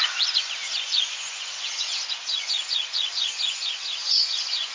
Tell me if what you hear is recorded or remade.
remade